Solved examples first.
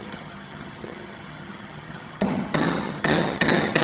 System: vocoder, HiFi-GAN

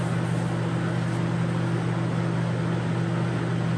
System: none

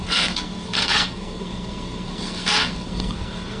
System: codec, SNAC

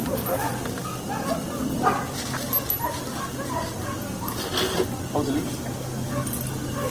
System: none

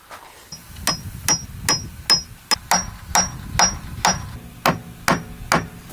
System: none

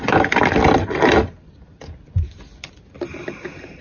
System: none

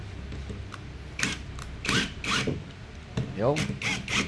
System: none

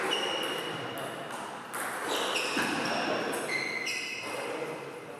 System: none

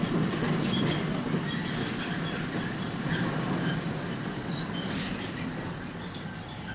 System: none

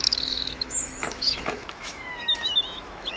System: autoencoder, DAC-VAE